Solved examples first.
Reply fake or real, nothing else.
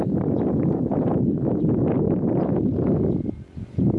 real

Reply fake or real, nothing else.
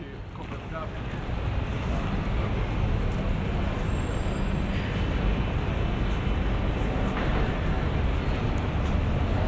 real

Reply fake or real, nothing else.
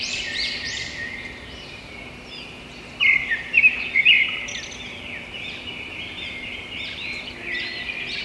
fake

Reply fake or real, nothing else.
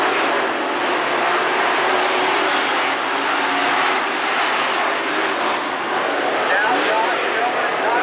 real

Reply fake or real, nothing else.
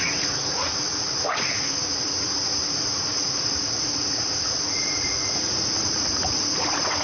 fake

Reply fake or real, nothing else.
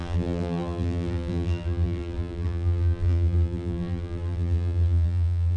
fake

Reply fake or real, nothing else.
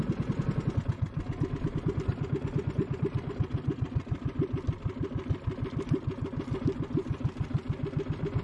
real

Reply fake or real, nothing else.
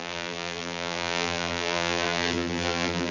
fake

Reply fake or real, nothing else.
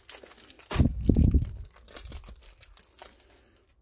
real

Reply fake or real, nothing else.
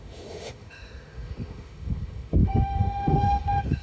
fake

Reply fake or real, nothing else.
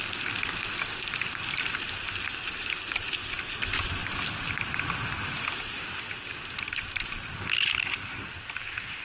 real